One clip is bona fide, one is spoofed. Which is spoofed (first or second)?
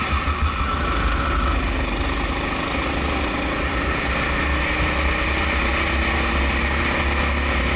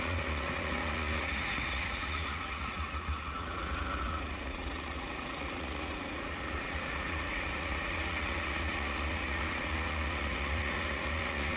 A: second